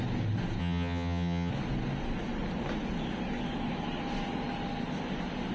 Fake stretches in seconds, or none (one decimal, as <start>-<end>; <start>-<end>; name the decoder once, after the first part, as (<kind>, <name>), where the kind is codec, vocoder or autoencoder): 0.6-1.5 (vocoder, HiFi-GAN)